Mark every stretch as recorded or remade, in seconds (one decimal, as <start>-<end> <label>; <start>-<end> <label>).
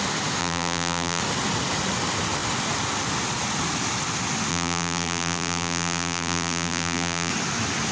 0.0-0.4 recorded; 0.4-1.2 remade; 1.2-4.5 recorded; 4.5-7.3 remade; 7.3-7.9 recorded